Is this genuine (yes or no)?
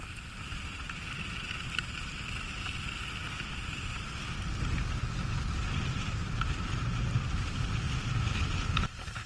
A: yes